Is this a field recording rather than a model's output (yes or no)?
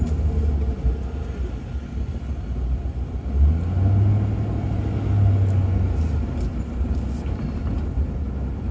yes